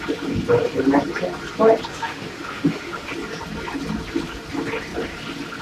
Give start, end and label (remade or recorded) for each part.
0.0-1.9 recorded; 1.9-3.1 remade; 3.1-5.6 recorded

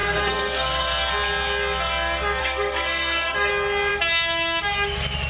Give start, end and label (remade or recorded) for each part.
0.0-0.8 remade; 0.8-2.4 recorded; 2.4-3.5 remade; 3.5-5.3 recorded

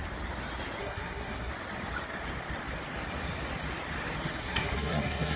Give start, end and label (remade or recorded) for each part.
0.0-0.8 recorded; 0.8-1.5 remade; 1.5-4.4 recorded; 4.4-5.4 remade

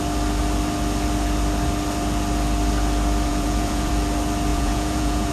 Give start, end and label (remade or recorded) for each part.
0.0-3.3 recorded; 3.3-3.9 remade; 3.9-4.5 recorded; 4.5-5.3 remade

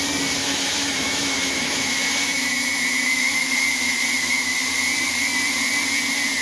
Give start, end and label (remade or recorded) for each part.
0.0-0.4 recorded; 0.4-3.5 remade; 3.5-6.4 recorded

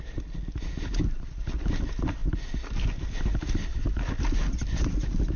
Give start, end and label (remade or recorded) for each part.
0.0-5.4 recorded

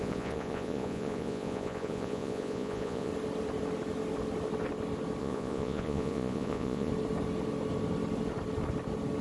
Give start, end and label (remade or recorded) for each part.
0.0-3.1 remade; 3.1-5.2 recorded; 5.2-6.9 remade; 6.9-9.2 recorded

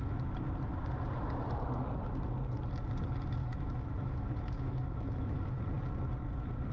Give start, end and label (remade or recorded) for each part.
0.0-3.4 recorded; 3.4-5.6 remade; 5.6-6.7 recorded